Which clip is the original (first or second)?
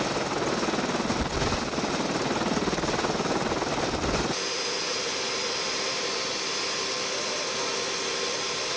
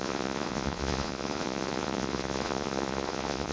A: first